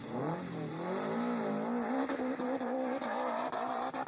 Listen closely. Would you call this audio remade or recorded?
recorded